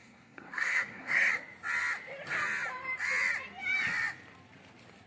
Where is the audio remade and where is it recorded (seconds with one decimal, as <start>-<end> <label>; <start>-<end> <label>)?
0.0-1.3 remade; 1.3-5.1 recorded